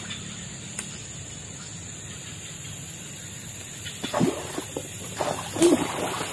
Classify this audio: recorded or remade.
recorded